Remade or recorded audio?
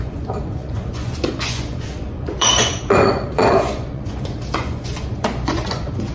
remade